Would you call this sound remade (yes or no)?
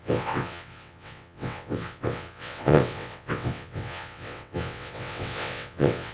yes